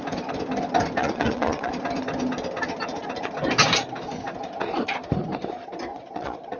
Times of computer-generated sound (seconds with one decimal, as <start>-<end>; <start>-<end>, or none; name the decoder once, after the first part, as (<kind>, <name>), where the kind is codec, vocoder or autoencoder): 1.0-1.7 (vocoder, Vocos); 5.9-6.6